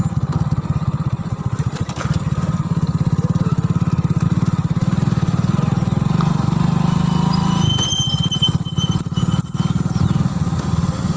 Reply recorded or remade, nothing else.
recorded